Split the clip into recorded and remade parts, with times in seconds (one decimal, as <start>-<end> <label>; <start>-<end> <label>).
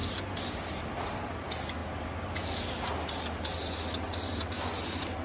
0.0-5.2 recorded